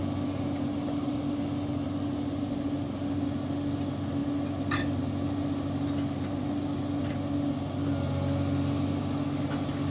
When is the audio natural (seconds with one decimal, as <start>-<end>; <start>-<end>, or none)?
0.0-9.9